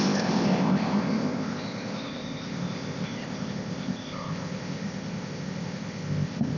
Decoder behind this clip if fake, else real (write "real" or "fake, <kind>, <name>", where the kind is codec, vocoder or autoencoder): fake, codec, ZipCodec